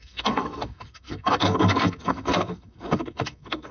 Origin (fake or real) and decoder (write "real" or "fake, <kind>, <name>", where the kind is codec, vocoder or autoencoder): fake, codec, SNAC